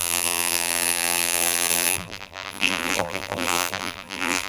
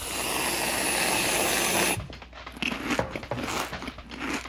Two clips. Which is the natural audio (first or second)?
second